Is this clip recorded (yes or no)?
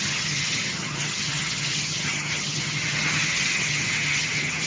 no